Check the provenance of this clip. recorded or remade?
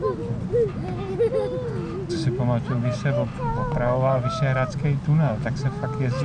recorded